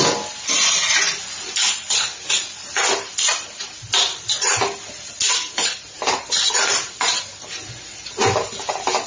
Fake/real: real